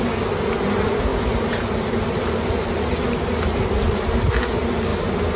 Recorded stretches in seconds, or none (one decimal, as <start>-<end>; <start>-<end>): 0.0-5.4